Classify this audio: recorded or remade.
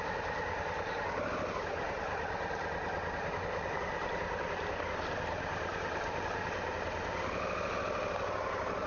recorded